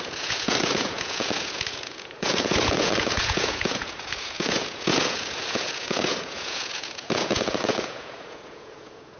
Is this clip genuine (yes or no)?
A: no